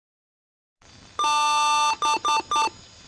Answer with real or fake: real